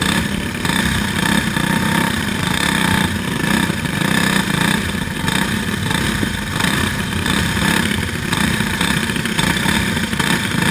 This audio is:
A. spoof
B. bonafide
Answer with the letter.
A